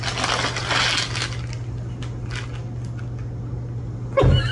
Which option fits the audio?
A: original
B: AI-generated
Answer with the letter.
A